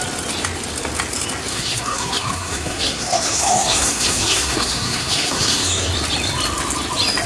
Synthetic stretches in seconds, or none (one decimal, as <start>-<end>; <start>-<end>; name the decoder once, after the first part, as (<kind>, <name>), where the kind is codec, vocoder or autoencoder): 1.5-5.9 (codec, SNAC)